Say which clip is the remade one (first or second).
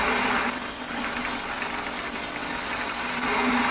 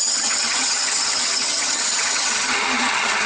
second